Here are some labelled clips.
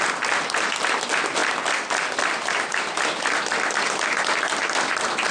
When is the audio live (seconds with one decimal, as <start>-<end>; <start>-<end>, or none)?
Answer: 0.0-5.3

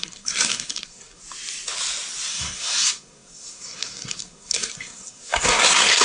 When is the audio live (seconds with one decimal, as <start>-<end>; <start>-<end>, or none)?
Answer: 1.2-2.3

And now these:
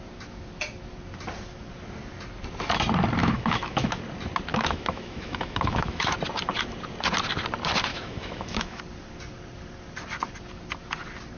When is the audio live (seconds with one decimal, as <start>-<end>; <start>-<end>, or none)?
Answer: 0.0-3.2; 4.0-4.5; 6.1-7.9; 8.8-11.4

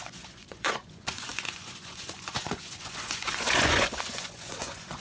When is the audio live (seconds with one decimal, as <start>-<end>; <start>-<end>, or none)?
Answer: none

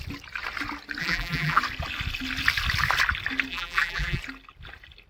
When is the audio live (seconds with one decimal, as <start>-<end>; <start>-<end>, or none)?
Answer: 0.0-1.0; 1.6-3.5; 4.2-5.1